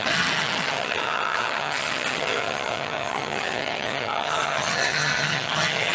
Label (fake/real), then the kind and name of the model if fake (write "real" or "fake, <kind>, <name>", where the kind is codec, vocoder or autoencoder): fake, vocoder, HiFi-GAN